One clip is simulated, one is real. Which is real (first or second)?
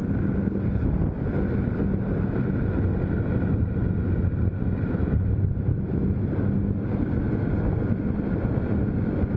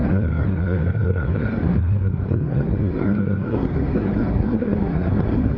first